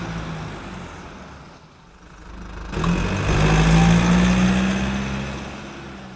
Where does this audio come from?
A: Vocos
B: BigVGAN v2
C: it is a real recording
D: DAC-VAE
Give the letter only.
C